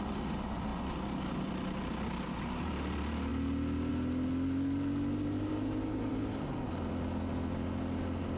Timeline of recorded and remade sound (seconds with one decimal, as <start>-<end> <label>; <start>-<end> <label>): 0.0-5.5 recorded; 5.5-6.1 remade; 6.1-8.4 recorded